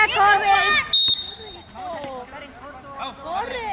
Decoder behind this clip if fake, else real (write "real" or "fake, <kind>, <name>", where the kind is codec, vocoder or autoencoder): real